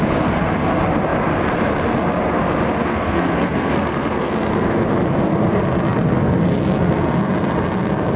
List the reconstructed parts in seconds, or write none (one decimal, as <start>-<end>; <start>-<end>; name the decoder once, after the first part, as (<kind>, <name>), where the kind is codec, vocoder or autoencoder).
2.9-4.3 (codec, SNAC)